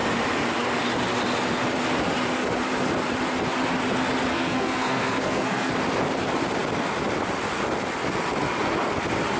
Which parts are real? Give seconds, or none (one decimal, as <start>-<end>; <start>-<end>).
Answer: 0.0-4.3; 5.7-9.4